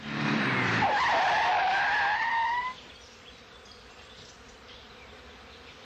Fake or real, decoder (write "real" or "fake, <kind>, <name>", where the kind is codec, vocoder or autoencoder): fake, vocoder, BigVGAN v2